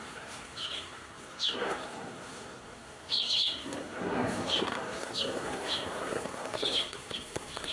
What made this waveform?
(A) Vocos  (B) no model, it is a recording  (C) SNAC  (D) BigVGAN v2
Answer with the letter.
C